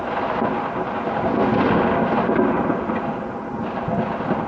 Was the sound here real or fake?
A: real